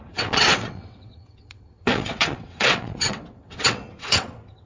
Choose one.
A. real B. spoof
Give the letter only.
B